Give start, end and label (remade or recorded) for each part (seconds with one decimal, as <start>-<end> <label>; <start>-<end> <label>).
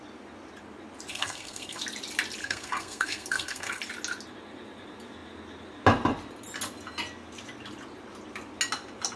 0.0-1.1 recorded; 1.1-1.8 remade; 1.8-2.4 recorded; 2.4-3.8 remade; 3.8-9.2 recorded